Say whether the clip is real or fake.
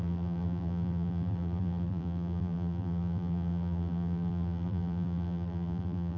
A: fake